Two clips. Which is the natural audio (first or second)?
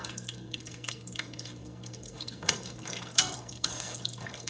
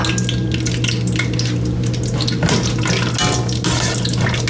second